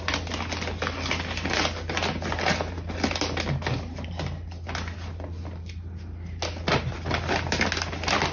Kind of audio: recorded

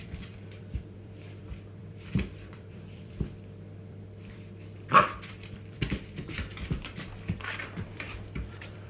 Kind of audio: remade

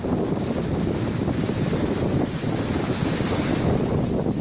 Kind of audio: recorded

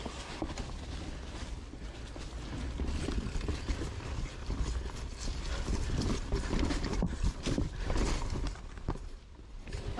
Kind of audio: recorded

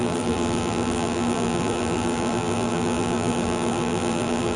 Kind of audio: remade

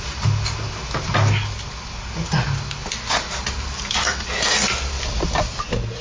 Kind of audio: recorded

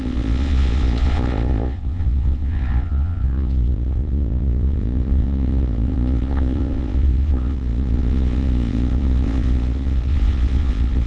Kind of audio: remade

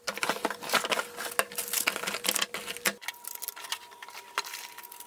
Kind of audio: recorded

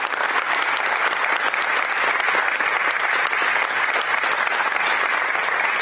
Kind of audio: recorded